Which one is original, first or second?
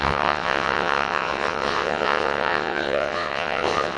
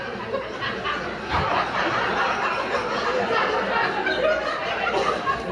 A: second